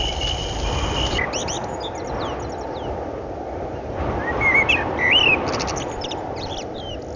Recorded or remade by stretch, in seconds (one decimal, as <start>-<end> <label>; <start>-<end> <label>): 0.0-0.4 remade; 0.4-3.9 recorded; 3.9-7.2 remade